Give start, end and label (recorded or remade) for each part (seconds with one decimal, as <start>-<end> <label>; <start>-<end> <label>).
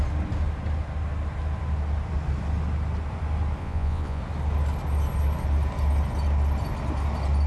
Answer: 0.0-3.6 recorded; 3.6-4.2 remade; 4.2-7.5 recorded